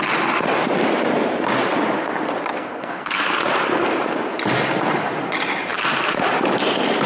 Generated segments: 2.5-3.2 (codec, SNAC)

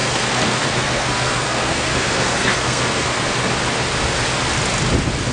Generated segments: 0.0-3.2 (codec, SNAC)

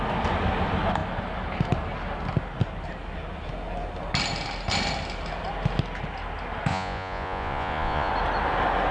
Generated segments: 6.7-8.1 (vocoder, Vocos)

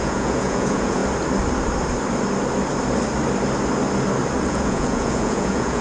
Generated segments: 0.0-1.0 (vocoder, Vocos); 4.5-5.8

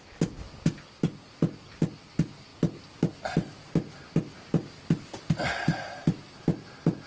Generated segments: none

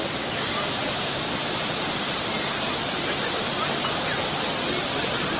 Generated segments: 0.0-2.7 (vocoder, BigVGAN v2); 4.1-4.6

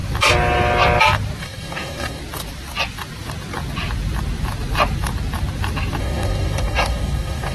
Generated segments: 1.4-2.2 (codec, DAC); 6.0-7.5